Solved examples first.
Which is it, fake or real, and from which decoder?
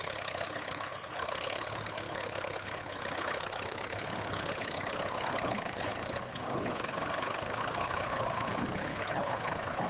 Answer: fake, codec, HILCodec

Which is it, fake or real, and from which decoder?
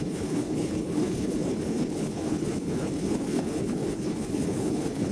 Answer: fake, codec, HILCodec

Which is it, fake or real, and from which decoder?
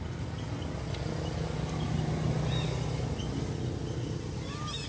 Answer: real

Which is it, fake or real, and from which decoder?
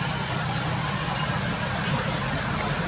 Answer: real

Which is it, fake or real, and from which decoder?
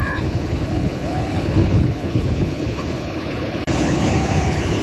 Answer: fake, codec, HILCodec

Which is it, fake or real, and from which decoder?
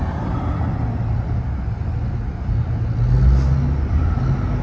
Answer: real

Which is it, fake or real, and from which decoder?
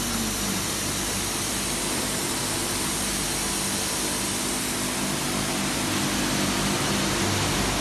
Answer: real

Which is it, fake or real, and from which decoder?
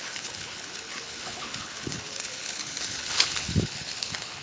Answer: fake, codec, HILCodec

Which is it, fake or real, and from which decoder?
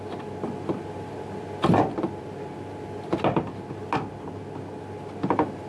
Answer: real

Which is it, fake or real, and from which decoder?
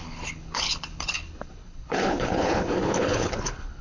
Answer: fake, codec, HILCodec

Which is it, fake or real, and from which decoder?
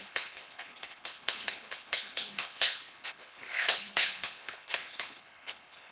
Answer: fake, codec, HILCodec